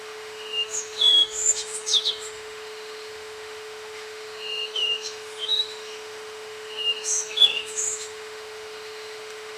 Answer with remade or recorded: remade